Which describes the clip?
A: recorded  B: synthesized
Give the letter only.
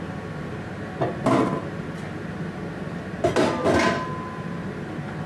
A